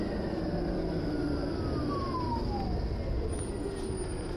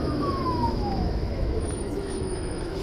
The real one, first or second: first